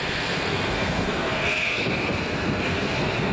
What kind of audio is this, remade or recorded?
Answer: remade